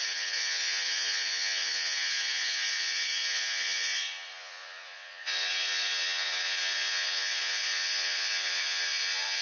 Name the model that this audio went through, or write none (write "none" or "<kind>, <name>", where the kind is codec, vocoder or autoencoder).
vocoder, Vocos